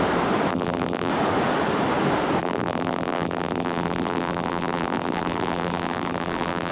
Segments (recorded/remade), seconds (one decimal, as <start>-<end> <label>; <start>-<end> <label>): 0.0-0.5 recorded; 0.5-1.1 remade; 1.1-2.4 recorded; 2.4-6.7 remade